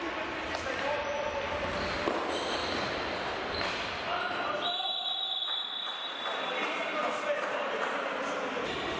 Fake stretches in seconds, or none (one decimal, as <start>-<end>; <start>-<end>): 0.0-2.6; 3.5-4.1; 6.2-6.9